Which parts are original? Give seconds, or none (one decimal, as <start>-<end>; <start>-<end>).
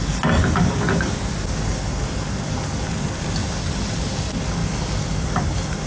0.0-3.4; 4.0-5.9